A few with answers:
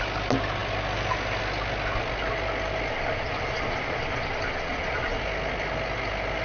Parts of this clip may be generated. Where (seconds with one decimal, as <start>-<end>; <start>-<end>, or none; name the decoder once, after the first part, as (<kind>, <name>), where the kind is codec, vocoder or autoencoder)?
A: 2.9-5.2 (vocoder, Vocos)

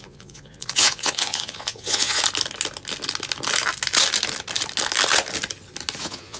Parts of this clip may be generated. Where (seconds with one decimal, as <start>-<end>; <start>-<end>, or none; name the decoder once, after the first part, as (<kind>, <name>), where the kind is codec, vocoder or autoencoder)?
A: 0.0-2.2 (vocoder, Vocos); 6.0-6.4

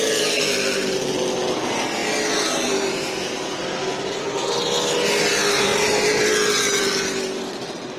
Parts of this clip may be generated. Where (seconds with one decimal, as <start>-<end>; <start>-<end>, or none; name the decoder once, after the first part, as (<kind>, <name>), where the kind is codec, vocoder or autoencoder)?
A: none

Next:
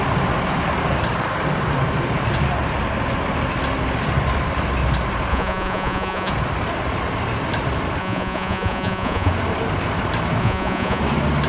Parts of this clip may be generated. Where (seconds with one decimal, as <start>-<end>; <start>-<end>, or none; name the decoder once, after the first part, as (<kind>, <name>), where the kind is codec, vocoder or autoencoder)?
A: 5.3-6.3 (vocoder, Vocos); 8.0-9.3; 10.4-11.0

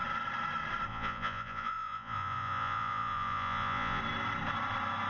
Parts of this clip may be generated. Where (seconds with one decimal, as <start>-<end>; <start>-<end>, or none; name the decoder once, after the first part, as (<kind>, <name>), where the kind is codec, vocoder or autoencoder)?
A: 0.9-4.0 (vocoder, Vocos)

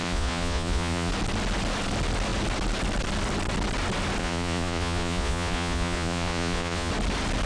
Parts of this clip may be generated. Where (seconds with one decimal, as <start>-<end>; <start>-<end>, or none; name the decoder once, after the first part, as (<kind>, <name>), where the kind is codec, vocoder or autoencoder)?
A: 0.0-1.1 (vocoder, Vocos); 4.2-6.9

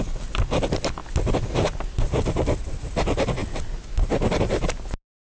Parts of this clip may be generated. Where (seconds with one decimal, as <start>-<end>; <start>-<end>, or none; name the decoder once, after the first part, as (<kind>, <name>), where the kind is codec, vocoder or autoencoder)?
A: none

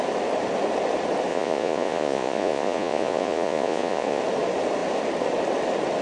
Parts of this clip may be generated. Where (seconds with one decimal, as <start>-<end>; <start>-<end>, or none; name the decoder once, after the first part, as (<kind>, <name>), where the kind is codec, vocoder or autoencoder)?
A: 1.3-4.2 (vocoder, Vocos)